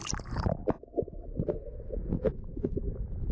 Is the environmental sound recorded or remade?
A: recorded